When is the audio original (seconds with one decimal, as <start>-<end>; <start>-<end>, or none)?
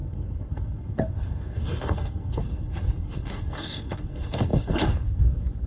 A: none